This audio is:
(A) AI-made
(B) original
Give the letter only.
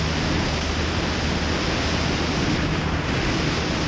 B